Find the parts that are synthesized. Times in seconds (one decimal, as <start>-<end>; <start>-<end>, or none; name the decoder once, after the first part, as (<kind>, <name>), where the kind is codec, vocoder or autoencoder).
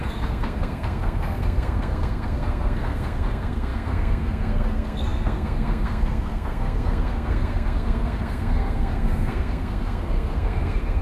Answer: 0.0-11.0 (codec, SNAC)